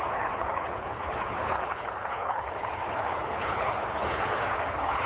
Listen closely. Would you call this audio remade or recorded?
remade